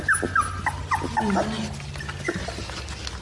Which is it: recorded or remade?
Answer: recorded